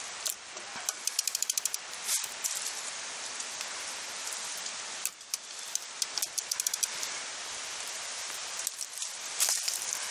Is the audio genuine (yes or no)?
no